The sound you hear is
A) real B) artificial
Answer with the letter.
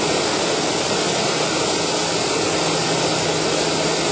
A